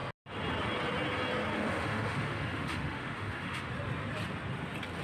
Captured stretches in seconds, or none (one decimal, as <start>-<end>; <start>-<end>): 0.0-1.5; 3.7-5.0